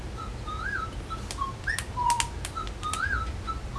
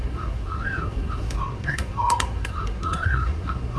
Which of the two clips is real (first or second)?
first